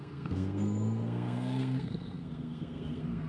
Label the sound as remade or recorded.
remade